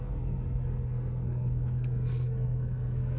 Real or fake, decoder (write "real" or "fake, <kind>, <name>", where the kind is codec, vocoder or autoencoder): fake, codec, SNAC